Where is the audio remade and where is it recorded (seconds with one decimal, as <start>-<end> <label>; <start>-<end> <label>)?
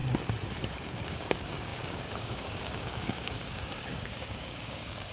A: 0.0-0.8 recorded; 0.8-5.1 remade